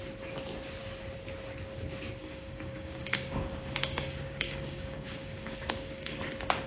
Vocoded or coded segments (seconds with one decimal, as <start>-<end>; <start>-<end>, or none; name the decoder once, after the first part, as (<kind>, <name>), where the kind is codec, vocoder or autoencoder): 2.2-6.2 (codec, DAC)